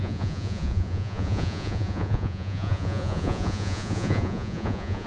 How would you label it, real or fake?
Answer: fake